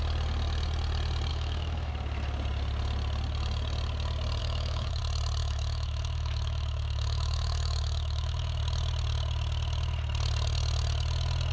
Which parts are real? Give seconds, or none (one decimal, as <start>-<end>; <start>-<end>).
0.0-1.3; 1.9-4.4; 5.0-5.4; 8.6-11.5

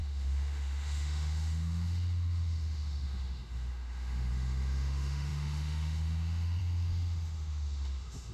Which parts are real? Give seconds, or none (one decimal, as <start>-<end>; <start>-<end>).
none

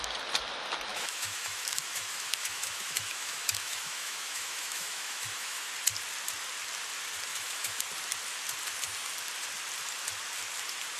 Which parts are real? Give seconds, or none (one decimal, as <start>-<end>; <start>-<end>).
0.0-0.9; 5.7-7.3; 7.8-11.0

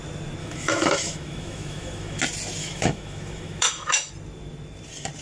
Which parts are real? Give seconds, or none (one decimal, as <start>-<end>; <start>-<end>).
0.0-0.4; 2.2-2.6; 4.1-5.2

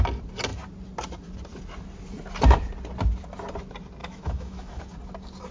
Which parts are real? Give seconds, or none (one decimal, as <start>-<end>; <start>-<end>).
0.0-4.0; 4.8-5.5

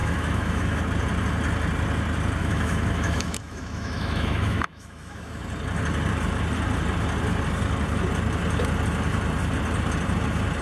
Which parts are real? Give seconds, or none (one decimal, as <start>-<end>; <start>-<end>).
0.8-2.4; 5.4-10.6